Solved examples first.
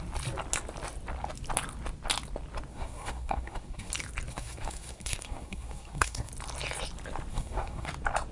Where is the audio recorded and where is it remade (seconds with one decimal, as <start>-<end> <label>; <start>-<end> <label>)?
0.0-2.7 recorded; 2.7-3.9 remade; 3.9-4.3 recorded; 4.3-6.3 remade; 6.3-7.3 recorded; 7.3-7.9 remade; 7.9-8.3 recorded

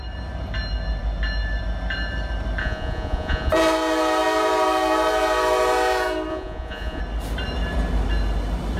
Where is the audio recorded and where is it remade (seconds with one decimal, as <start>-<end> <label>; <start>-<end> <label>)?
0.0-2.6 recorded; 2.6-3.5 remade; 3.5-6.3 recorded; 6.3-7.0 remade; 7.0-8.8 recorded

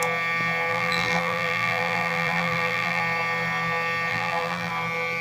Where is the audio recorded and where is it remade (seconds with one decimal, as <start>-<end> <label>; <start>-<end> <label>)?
0.0-0.7 recorded; 0.7-3.0 remade; 3.0-4.1 recorded; 4.1-4.7 remade; 4.7-5.2 recorded

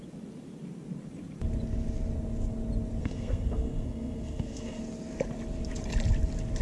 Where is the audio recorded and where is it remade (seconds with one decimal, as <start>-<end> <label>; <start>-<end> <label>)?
0.0-3.0 recorded; 3.0-4.8 remade; 4.8-6.6 recorded

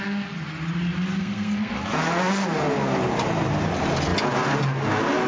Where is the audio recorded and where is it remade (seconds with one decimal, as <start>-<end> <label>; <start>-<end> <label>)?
0.0-1.2 recorded; 1.2-1.7 remade; 1.7-5.3 recorded

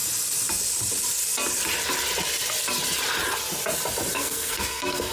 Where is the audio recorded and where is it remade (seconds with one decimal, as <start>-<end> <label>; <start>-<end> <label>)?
0.0-4.1 recorded; 4.1-5.1 remade

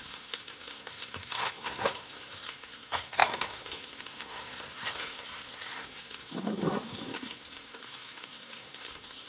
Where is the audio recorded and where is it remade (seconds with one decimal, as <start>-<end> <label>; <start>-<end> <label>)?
0.0-9.3 remade